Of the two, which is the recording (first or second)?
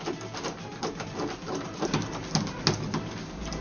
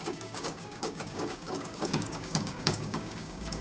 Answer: first